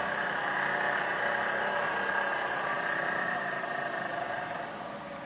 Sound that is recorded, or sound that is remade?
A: remade